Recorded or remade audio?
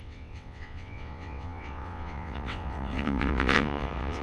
remade